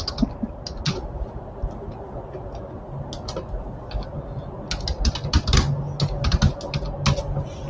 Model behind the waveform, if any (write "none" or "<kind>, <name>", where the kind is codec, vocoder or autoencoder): none